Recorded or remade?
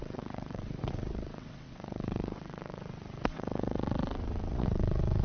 remade